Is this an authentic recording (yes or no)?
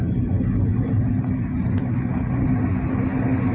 yes